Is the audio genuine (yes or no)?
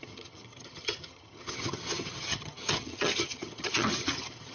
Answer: no